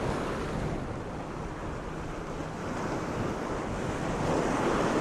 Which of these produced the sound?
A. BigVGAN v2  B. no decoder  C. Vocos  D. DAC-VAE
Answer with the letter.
B